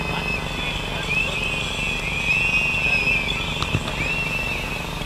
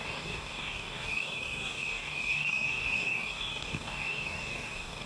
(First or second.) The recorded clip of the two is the first